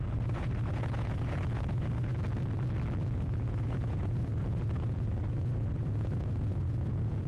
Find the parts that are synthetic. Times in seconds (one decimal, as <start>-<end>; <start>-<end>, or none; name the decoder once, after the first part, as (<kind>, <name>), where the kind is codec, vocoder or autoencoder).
0.0-2.1 (vocoder, Vocos); 3.1-7.3

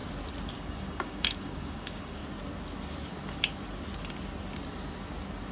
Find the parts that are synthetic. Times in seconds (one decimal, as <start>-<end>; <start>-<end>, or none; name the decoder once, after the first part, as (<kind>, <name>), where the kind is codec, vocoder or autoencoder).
0.5-2.2 (codec, DAC)

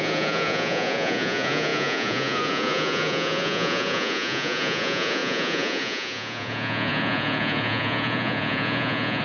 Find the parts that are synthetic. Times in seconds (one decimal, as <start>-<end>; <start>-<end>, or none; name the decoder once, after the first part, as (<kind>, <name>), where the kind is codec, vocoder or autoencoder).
0.0-9.2 (vocoder, Vocos)

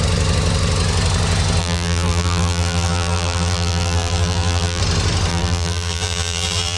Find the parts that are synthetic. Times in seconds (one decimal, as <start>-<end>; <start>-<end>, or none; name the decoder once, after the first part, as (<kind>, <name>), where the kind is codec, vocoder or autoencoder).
1.6-4.8 (vocoder, BigVGAN v2); 5.3-6.8

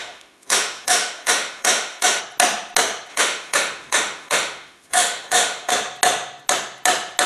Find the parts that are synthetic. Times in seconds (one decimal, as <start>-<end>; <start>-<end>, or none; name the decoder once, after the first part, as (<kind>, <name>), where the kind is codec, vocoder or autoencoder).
0.0-2.2 (autoencoder, DAC-VAE); 3.1-5.7

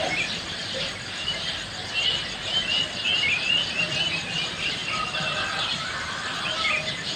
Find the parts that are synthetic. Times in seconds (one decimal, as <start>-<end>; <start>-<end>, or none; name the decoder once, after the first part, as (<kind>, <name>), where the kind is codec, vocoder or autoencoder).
0.6-2.5 (vocoder, BigVGAN v2); 4.8-5.4

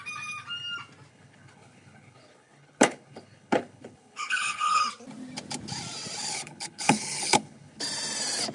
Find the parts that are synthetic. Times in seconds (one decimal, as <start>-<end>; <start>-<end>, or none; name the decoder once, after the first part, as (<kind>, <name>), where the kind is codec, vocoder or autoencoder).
1.1-4.8 (codec, HILCodec); 6.2-7.8